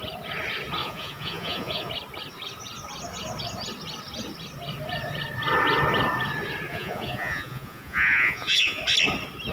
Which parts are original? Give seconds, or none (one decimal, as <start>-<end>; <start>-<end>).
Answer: 0.0-0.8; 1.9-6.7; 8.8-9.5